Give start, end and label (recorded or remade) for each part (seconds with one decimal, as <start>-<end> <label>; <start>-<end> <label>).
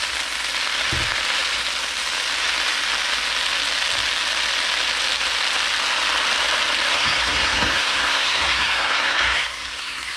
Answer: 0.0-6.9 recorded; 6.9-10.2 remade